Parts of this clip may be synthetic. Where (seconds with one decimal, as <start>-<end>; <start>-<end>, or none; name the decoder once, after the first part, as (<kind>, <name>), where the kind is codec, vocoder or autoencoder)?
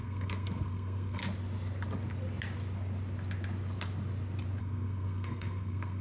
0.0-1.2 (codec, SNAC); 4.6-6.0